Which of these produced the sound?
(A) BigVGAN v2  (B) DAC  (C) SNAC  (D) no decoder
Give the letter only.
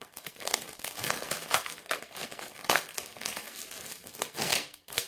C